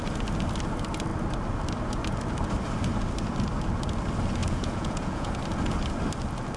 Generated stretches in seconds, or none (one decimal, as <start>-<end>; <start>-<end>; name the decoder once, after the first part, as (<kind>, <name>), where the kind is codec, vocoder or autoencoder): 4.4-5.3 (vocoder, Vocos)

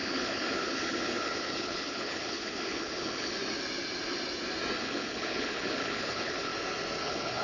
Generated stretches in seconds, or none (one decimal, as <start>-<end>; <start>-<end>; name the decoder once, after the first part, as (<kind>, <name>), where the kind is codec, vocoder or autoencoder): 0.0-3.4 (codec, HILCodec); 4.8-6.5; 7.0-7.4